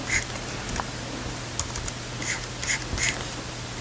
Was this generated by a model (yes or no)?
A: no